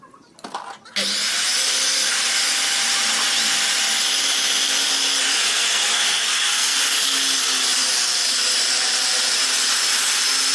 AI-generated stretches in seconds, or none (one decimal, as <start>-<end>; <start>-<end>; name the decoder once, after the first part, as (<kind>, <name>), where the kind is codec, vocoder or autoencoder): 5.3-6.8 (codec, SNAC)